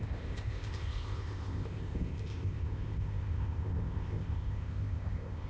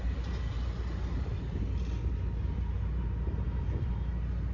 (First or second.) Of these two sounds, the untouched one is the second